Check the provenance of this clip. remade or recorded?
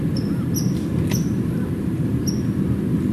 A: recorded